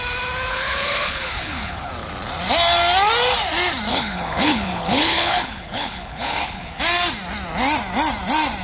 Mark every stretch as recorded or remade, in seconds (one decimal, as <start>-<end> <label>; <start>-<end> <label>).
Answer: 0.0-0.5 recorded; 0.5-1.9 remade; 1.9-3.9 recorded; 3.9-6.8 remade; 6.8-8.6 recorded

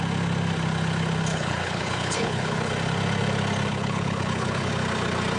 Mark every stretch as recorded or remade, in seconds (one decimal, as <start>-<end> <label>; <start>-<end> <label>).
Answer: 0.0-1.3 recorded; 1.3-2.7 remade; 2.7-3.7 recorded; 3.7-4.7 remade; 4.7-5.4 recorded